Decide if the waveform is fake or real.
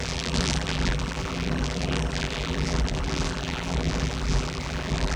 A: fake